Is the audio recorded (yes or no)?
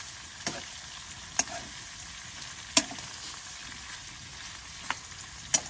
yes